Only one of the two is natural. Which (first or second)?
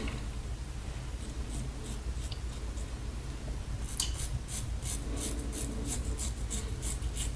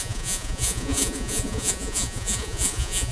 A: first